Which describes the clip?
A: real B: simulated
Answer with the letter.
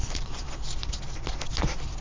A